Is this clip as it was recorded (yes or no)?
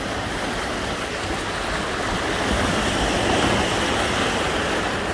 yes